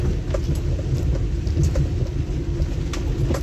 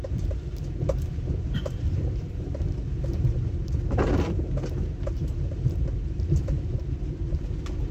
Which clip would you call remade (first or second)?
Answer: second